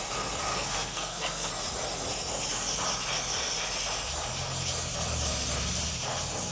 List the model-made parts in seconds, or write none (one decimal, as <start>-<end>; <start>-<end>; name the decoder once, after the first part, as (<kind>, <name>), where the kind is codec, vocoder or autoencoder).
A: 0.5-1.5 (codec, SNAC)